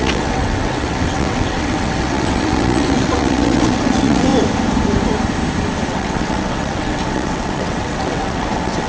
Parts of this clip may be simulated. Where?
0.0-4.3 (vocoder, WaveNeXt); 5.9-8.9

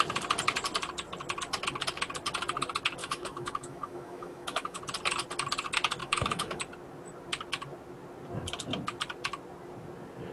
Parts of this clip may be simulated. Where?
3.0-4.8 (autoencoder, DAC-VAE); 6.0-6.6

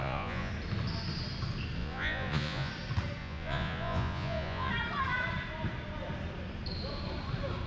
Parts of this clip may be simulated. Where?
0.0-0.5 (vocoder, Vocos); 1.8-2.7; 3.2-4.7

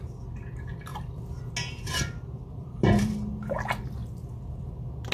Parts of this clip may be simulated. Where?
2.5-3.1 (vocoder, BigVGAN v2); 4.0-5.1

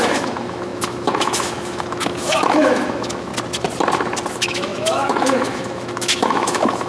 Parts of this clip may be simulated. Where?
0.0-3.3 (autoencoder, DAC-VAE); 4.3-6.9

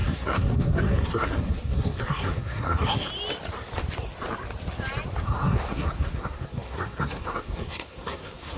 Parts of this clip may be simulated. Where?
0.0-3.1 (codec, SNAC); 5.2-8.6